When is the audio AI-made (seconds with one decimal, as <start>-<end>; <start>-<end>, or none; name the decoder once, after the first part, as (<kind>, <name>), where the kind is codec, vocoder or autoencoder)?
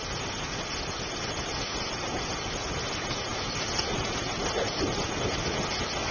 none